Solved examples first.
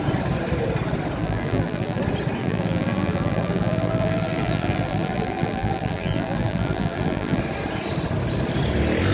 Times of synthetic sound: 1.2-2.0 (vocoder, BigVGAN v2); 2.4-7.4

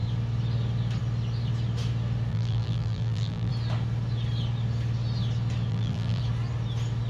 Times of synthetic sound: 2.3-3.5 (vocoder, BigVGAN v2); 5.7-6.2

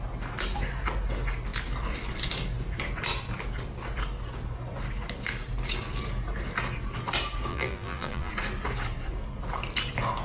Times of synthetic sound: 7.5-8.3 (vocoder, BigVGAN v2)

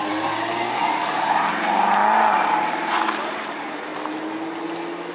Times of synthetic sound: 0.0-0.8 (vocoder, BigVGAN v2); 2.5-3.9

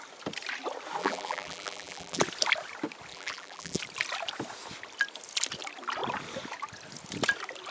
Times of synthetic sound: 1.0-2.2 (vocoder, BigVGAN v2); 3.1-3.8